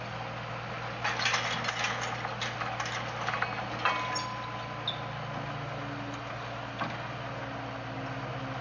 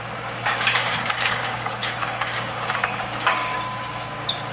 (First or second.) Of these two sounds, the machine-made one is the second